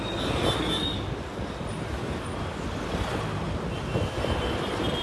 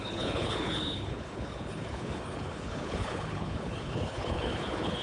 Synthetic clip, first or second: second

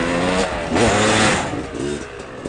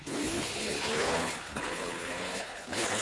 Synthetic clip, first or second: second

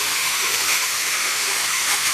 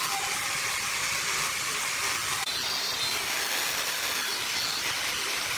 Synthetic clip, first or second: first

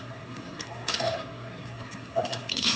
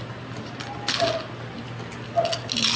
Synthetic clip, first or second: first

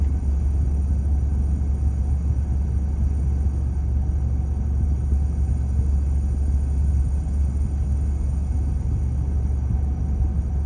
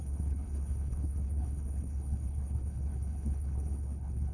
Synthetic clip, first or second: second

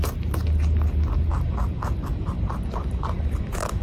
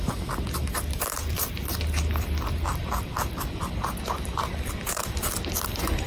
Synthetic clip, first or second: second